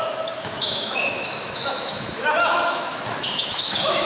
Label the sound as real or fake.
fake